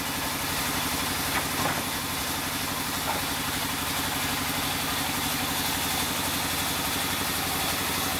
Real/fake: real